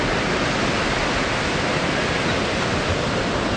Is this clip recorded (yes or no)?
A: yes